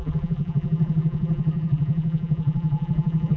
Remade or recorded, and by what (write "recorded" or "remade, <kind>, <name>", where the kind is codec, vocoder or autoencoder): remade, vocoder, BigVGAN v2